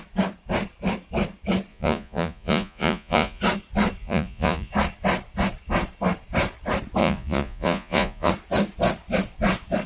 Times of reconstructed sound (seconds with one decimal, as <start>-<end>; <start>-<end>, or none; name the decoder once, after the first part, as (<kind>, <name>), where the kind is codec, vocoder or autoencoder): 1.7-3.4 (vocoder, Vocos); 4.0-4.7; 7.0-8.3